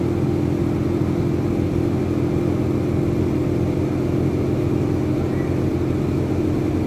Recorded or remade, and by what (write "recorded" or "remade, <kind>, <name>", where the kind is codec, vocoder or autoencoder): recorded